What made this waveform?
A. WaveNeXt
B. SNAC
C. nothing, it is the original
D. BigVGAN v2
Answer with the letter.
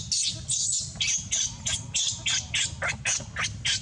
C